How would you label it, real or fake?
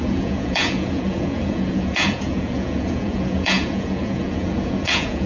fake